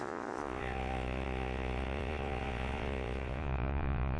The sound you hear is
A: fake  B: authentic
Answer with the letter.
A